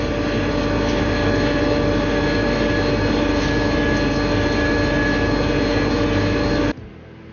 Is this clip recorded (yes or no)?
yes